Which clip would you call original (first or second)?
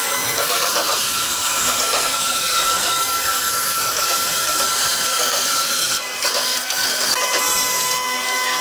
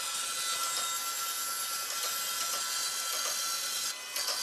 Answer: second